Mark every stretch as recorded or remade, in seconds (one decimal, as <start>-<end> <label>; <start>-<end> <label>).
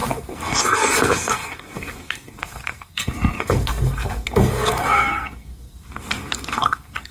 0.0-7.1 remade